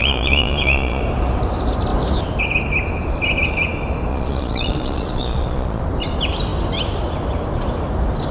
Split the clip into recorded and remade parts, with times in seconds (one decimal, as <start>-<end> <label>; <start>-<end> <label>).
0.0-1.0 remade; 1.0-4.1 recorded; 4.1-5.8 remade; 5.8-8.3 recorded